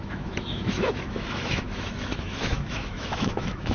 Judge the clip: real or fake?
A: fake